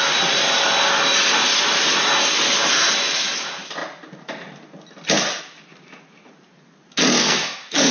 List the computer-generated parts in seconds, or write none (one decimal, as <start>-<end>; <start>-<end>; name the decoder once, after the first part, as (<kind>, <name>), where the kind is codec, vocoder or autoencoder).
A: 7.2-7.9 (codec, SNAC)